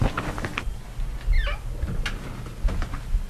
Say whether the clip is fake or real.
real